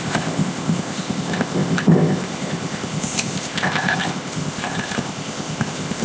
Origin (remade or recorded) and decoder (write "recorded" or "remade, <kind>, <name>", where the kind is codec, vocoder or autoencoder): remade, codec, ZipCodec